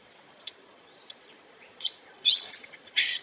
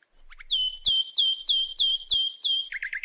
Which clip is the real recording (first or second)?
second